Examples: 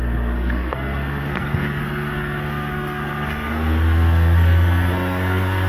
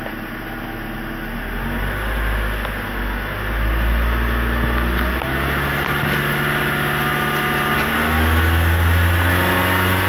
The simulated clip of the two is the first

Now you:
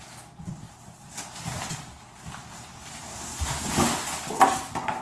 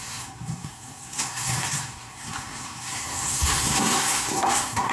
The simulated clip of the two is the second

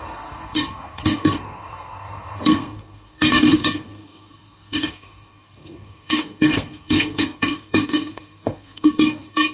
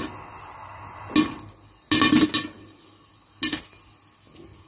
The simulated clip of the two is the first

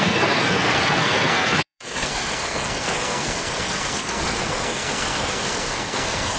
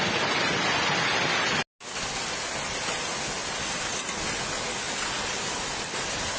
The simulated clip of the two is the first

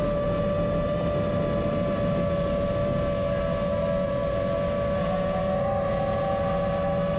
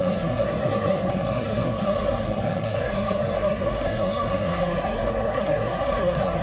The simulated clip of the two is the second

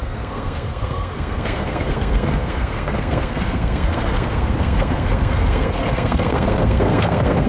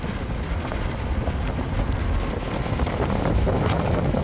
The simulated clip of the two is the first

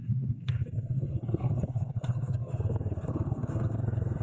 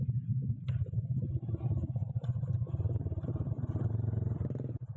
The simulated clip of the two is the first